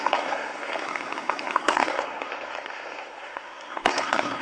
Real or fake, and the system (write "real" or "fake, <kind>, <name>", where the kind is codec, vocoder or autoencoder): fake, codec, SNAC